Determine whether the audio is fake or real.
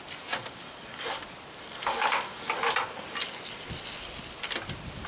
real